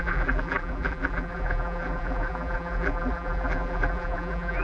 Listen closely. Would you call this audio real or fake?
fake